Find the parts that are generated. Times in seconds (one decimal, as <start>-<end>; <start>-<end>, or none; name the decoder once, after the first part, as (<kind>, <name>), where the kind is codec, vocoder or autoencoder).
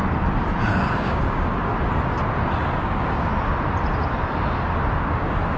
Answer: 0.7-1.7 (codec, DAC); 2.8-3.3; 4.9-5.6